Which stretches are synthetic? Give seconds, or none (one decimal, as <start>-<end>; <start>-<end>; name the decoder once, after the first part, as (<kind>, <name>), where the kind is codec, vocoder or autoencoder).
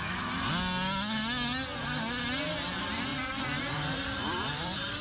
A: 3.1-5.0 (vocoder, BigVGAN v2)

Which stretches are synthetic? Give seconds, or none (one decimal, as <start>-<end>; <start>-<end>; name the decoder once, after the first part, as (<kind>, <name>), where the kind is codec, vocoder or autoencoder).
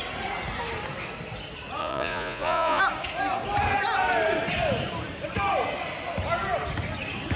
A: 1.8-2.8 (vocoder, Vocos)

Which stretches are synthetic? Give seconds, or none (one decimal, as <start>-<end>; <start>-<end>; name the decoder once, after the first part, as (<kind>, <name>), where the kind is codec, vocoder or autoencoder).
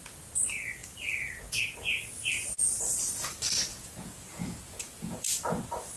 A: 3.7-5.3 (vocoder, Vocos)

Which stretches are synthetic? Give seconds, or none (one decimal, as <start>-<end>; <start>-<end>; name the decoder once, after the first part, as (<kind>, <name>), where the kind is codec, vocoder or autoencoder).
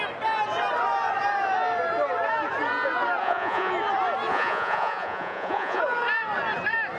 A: 3.2-3.7 (vocoder, Vocos); 4.3-5.8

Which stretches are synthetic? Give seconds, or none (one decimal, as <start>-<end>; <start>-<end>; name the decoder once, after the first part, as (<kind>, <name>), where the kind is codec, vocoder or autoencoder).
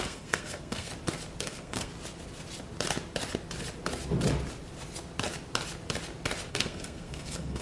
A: 0.0-0.9 (codec, SNAC); 1.4-1.9; 6.5-7.6